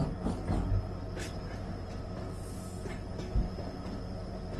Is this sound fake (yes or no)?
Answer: no